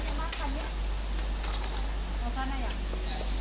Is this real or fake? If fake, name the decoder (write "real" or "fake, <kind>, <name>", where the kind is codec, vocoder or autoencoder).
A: real